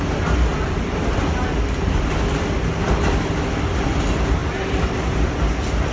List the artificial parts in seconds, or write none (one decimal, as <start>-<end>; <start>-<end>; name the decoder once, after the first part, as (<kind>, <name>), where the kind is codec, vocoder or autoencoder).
none

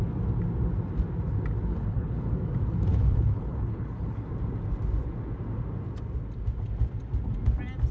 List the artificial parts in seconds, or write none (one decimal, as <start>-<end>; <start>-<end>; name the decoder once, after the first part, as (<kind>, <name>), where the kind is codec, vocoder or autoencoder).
1.7-2.3 (codec, HILCodec); 2.9-4.3

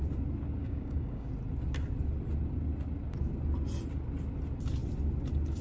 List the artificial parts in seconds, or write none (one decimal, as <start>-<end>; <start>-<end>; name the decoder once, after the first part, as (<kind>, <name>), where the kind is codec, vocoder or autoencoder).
0.6-1.3 (codec, DAC)